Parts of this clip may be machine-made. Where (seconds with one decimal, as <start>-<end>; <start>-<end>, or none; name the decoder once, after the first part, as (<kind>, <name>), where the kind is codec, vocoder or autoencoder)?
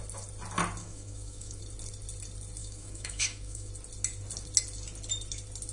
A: 0.8-1.6 (autoencoder, DAC-VAE); 2.6-3.7